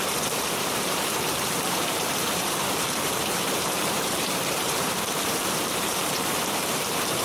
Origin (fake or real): fake